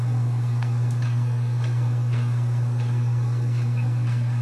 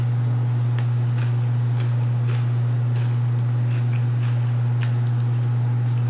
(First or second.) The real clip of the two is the second